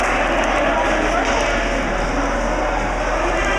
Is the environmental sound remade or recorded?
recorded